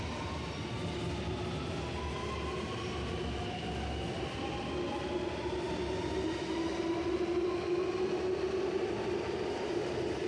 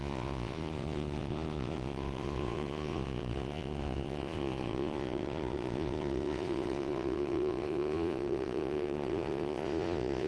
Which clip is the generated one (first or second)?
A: second